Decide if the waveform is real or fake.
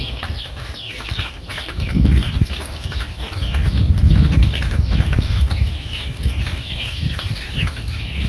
fake